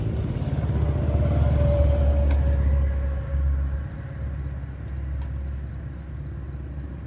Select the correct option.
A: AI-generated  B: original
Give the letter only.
B